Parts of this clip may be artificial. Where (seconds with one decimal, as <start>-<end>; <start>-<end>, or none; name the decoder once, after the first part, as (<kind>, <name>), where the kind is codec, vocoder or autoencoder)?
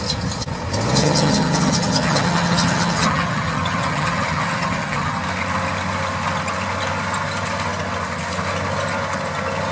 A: 1.0-5.2 (vocoder, HiFi-GAN)